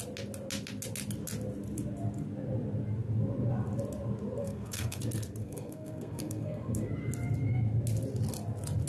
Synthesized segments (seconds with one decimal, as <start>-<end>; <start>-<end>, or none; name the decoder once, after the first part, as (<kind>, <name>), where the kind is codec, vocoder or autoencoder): 4.4-5.0 (codec, SNAC); 5.4-6.9